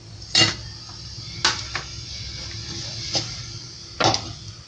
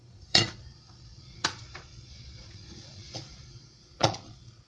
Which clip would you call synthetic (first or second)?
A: second